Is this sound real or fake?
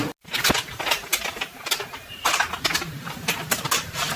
real